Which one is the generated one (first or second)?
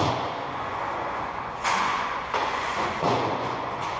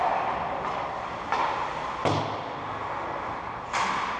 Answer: first